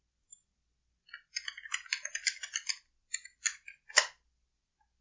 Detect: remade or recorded recorded